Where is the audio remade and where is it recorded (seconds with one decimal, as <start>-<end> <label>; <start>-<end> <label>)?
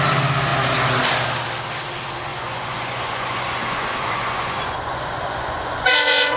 0.0-2.3 recorded; 2.3-6.4 remade